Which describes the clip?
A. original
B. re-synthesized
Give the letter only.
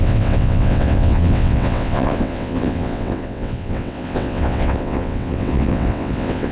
B